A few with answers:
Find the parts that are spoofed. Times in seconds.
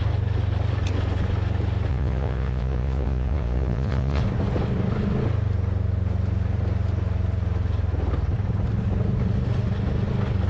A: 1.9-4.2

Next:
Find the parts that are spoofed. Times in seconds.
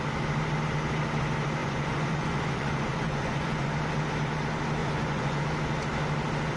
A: 1.6-3.7; 4.8-5.4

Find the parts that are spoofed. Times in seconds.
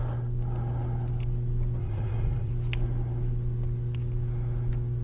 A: 1.8-2.5